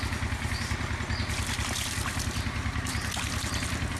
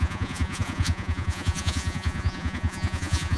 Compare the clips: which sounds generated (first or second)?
second